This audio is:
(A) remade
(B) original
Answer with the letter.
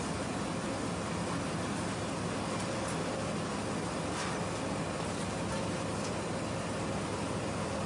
B